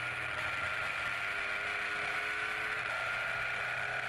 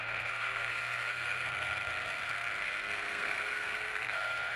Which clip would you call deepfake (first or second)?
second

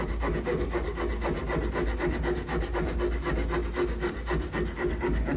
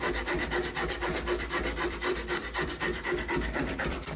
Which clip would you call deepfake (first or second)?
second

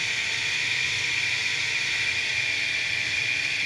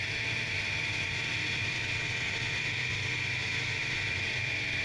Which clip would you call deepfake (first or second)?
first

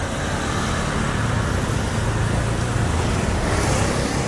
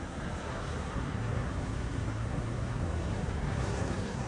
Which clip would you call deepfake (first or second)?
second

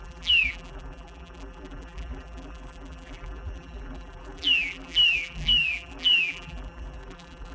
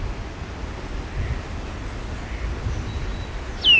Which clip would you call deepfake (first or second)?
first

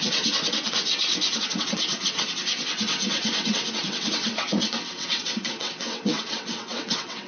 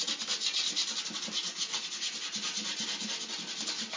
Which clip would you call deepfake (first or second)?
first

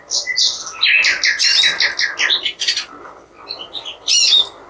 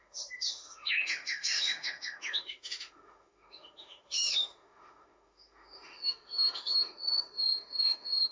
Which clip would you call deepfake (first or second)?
second